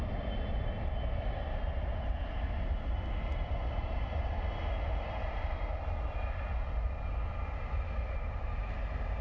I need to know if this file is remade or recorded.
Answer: recorded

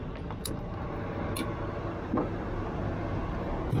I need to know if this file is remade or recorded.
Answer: recorded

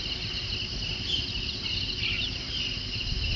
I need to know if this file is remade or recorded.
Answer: recorded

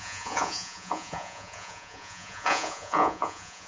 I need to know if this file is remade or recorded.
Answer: remade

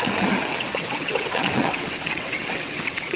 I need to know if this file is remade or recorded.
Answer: remade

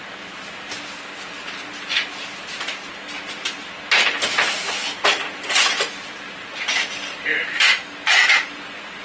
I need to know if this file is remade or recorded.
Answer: recorded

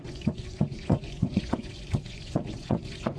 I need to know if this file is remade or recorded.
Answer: remade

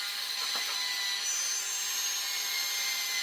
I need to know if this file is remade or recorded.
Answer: remade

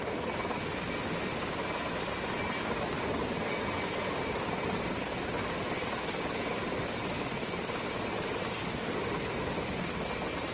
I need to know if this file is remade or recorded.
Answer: recorded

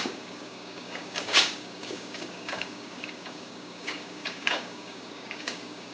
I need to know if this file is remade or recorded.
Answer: remade